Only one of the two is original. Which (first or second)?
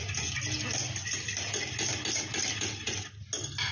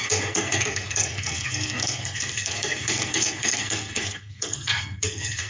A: first